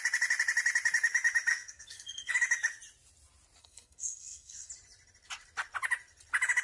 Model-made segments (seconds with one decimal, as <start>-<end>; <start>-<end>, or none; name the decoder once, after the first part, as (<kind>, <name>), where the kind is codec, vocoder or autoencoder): 1.5-2.3 (codec, SNAC); 3.6-4.7